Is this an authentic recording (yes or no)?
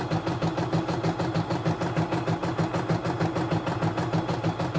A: yes